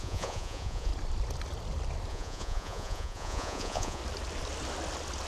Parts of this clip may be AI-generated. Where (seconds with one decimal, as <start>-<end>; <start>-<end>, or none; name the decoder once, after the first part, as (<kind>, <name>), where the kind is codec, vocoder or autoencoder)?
0.0-0.9 (vocoder, Vocos); 2.1-4.0